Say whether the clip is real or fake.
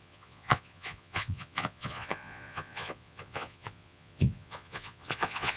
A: fake